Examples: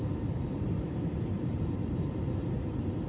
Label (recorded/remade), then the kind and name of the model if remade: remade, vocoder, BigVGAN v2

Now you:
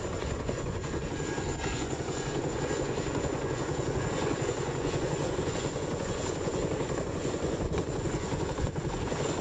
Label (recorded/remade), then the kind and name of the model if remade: remade, vocoder, Vocos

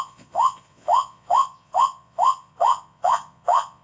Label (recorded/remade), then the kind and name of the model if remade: remade, vocoder, Vocos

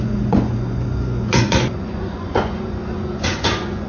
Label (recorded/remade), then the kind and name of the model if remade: remade, vocoder, Vocos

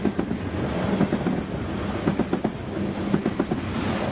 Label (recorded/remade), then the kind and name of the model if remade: recorded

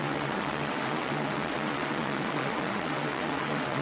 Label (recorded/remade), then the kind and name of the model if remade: remade, vocoder, WaveNeXt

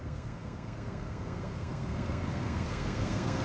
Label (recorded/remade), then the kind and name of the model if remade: remade, codec, SNAC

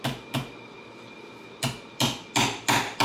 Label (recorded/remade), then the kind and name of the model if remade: recorded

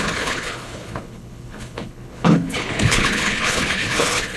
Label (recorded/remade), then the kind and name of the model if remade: remade, codec, HILCodec